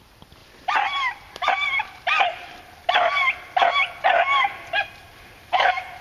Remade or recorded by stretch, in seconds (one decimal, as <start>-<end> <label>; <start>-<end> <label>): 0.0-0.4 recorded; 0.4-4.0 remade; 4.0-6.0 recorded